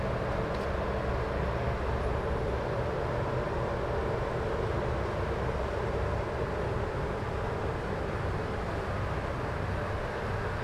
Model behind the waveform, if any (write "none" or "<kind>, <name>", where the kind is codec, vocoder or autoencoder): none